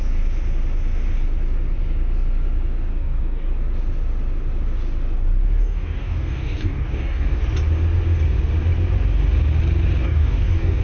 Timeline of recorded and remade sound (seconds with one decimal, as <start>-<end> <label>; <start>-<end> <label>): 0.0-2.9 recorded; 2.9-3.5 remade; 3.5-5.6 recorded; 5.6-7.4 remade; 7.4-10.0 recorded; 10.0-10.8 remade